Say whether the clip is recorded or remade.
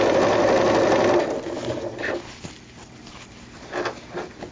recorded